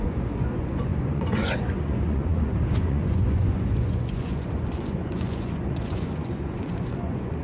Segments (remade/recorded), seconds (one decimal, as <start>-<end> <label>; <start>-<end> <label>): 0.0-7.4 remade